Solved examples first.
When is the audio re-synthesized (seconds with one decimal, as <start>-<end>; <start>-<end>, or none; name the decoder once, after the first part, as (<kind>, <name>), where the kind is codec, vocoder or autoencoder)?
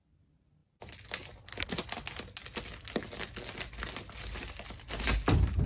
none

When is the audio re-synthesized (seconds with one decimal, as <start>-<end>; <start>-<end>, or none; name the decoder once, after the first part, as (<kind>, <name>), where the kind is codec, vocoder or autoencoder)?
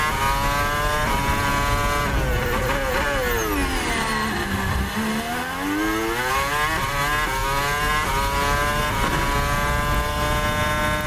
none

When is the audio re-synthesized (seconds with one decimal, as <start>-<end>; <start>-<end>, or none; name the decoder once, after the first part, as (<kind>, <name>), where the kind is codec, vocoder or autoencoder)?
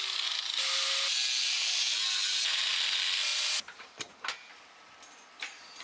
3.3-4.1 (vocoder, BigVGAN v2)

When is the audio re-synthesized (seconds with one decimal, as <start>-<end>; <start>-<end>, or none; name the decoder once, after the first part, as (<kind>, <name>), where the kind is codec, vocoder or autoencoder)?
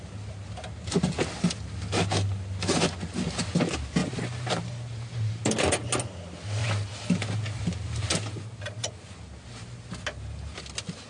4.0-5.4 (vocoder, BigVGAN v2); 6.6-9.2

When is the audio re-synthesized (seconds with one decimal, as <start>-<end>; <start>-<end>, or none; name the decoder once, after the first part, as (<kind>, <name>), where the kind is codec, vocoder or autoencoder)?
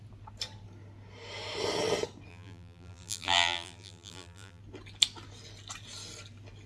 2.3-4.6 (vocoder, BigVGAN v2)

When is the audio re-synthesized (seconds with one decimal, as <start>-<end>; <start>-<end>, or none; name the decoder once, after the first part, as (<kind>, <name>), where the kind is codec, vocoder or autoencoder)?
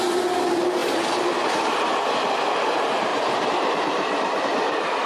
0.8-2.1 (vocoder, BigVGAN v2); 3.1-4.4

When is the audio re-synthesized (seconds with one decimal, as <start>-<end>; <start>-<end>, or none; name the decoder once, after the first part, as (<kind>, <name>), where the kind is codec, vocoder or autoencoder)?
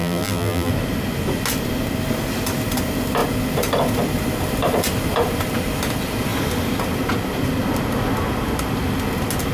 0.0-0.7 (vocoder, BigVGAN v2)